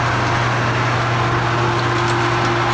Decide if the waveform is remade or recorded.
recorded